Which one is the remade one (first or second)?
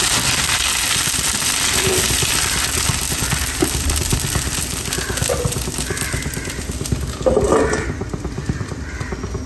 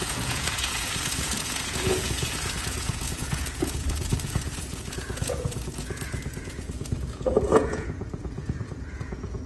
second